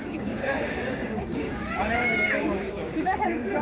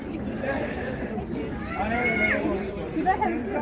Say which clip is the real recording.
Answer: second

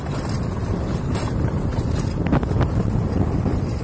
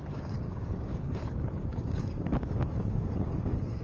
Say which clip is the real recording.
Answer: first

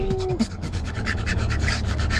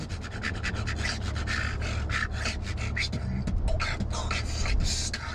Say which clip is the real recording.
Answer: second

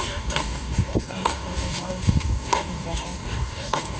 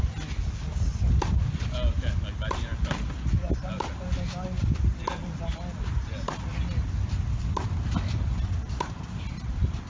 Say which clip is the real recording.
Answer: second